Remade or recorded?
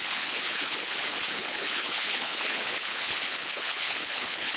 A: remade